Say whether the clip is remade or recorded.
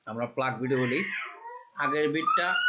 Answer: recorded